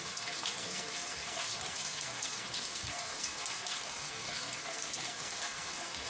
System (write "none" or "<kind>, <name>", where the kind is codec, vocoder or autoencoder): codec, SNAC